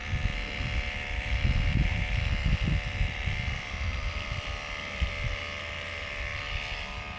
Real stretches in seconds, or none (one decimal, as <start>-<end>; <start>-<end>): none